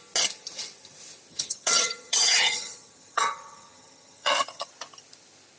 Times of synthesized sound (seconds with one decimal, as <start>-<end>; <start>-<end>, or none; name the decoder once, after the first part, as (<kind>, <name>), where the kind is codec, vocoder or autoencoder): 1.3-4.7 (vocoder, HiFi-GAN)